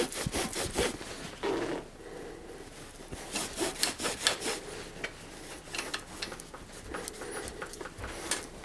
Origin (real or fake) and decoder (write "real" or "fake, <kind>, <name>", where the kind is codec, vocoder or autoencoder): real